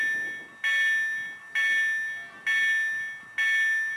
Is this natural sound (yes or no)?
yes